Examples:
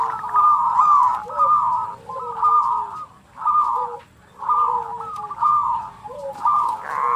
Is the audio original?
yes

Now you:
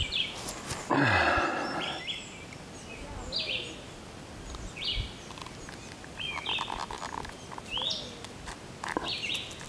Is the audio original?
yes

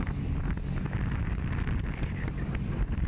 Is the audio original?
yes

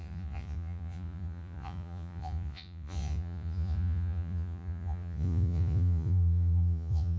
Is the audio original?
no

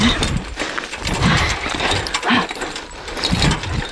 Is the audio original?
yes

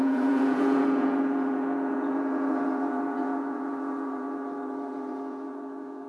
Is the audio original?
no